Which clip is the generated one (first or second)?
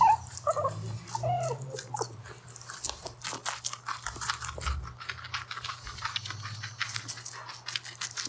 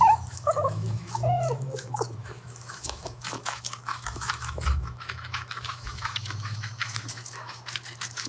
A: second